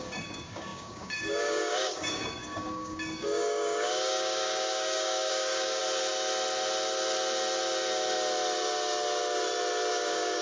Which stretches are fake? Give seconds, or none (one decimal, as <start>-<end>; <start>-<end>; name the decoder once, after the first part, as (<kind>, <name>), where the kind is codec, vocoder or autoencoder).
0.0-5.8 (codec, DAC); 9.9-10.4